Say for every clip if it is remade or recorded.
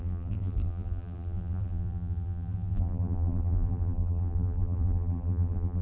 remade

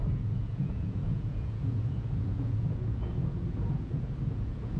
remade